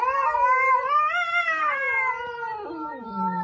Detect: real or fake real